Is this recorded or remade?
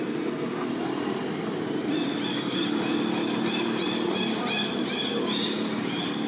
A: recorded